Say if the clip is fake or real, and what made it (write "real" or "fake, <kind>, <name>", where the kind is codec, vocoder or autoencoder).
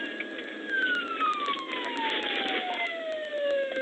real